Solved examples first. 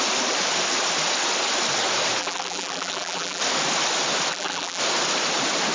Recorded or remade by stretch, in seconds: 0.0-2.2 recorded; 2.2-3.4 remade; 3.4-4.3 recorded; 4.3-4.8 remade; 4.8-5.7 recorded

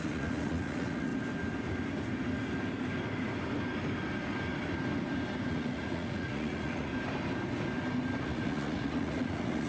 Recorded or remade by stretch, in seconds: 0.0-1.1 remade; 1.1-5.5 recorded; 5.5-6.9 remade; 6.9-8.2 recorded; 8.2-9.7 remade

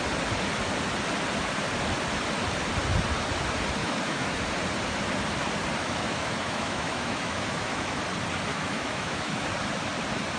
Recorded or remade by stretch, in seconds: 0.0-3.8 recorded; 3.8-4.4 remade; 4.4-5.8 recorded; 5.8-8.0 remade; 8.0-8.5 recorded; 8.5-9.5 remade; 9.5-10.4 recorded

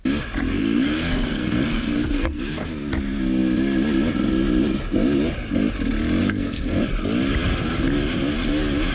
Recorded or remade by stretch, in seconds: 0.0-0.5 recorded; 0.5-2.7 remade; 2.7-6.2 recorded; 6.2-6.8 remade; 6.8-8.9 recorded

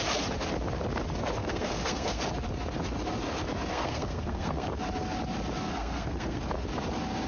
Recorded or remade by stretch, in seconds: 0.0-1.4 recorded; 1.4-2.2 remade; 2.2-3.7 recorded; 3.7-4.8 remade; 4.8-5.7 recorded; 5.7-6.4 remade; 6.4-7.3 recorded

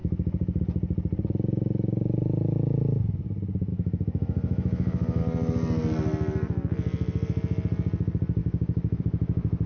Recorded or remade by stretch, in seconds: 0.0-0.6 remade; 0.6-3.7 recorded; 3.7-5.2 remade; 5.2-8.4 recorded; 8.4-9.0 remade; 9.0-9.7 recorded